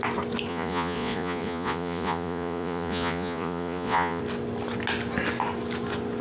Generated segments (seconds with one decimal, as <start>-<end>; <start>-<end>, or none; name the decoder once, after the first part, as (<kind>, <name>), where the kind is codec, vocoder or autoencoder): 0.5-4.2 (vocoder, Vocos)